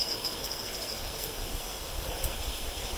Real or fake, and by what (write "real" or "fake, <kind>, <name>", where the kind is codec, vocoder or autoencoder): fake, codec, SNAC